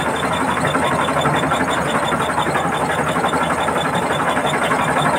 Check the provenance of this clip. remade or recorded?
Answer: recorded